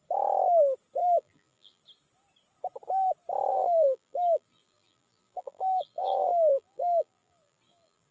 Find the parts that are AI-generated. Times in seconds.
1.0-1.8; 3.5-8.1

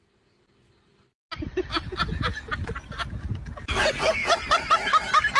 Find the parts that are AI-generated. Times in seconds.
none

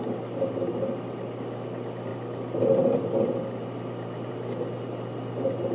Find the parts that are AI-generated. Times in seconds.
none

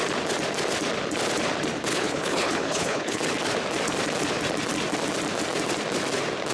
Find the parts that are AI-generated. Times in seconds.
1.9-3.2

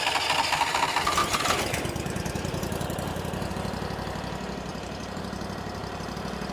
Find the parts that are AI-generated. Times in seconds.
1.2-3.5; 4.7-5.2; 5.8-6.5